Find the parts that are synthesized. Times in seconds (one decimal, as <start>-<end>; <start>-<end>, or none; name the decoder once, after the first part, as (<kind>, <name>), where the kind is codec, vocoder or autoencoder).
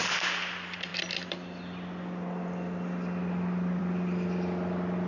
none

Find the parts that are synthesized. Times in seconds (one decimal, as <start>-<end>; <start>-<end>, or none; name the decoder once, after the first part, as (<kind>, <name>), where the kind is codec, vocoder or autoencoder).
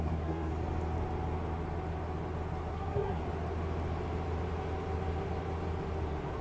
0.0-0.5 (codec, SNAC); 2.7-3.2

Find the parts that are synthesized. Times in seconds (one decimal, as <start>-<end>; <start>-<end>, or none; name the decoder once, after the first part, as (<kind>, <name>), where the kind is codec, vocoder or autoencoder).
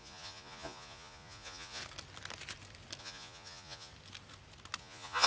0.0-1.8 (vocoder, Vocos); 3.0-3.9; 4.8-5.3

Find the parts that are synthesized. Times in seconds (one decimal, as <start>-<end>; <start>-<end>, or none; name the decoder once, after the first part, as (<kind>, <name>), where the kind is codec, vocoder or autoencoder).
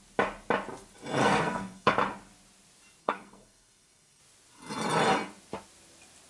1.2-1.9 (codec, SNAC); 3.0-4.2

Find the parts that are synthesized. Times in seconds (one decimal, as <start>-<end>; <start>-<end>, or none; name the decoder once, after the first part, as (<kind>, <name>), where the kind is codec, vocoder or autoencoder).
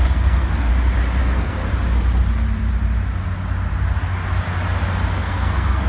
0.0-0.7 (codec, SNAC); 1.2-1.6; 5.1-5.9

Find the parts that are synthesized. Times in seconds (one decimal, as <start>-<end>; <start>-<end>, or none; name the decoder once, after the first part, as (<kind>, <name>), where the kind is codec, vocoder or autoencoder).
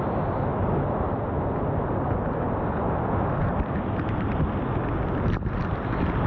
none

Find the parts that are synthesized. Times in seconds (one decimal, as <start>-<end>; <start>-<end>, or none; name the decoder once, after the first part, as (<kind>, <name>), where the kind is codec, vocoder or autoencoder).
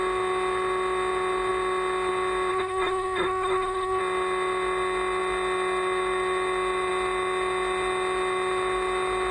2.5-4.0 (codec, SNAC)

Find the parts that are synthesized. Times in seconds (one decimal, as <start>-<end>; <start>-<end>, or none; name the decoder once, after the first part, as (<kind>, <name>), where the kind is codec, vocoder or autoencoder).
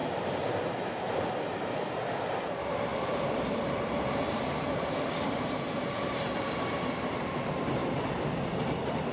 0.9-7.8 (vocoder, BigVGAN v2)